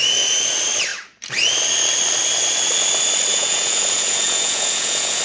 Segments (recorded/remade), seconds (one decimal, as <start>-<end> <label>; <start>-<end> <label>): 0.0-3.3 recorded; 3.3-5.2 remade